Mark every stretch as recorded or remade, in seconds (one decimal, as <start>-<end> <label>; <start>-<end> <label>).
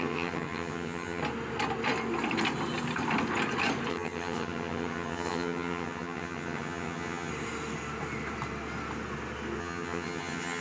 0.0-1.2 remade; 1.2-3.9 recorded; 3.9-7.3 remade; 7.3-9.6 recorded; 9.6-10.6 remade